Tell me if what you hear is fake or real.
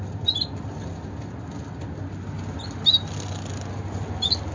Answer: real